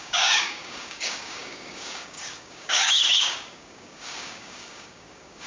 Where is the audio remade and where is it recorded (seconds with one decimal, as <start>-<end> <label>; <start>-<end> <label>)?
0.0-5.5 remade